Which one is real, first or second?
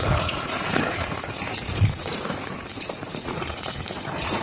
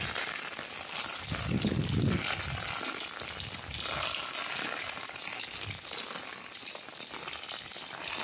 second